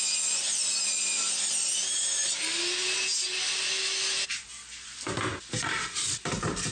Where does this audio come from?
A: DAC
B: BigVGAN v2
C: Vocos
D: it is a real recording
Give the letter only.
D